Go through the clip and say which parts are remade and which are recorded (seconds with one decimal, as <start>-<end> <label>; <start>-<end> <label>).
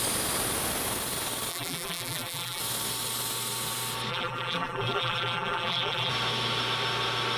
0.0-1.5 recorded; 1.5-2.6 remade; 2.6-4.1 recorded; 4.1-6.1 remade; 6.1-7.4 recorded